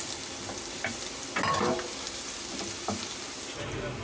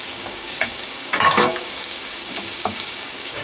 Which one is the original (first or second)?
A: first